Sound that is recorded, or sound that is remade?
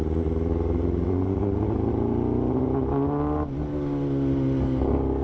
recorded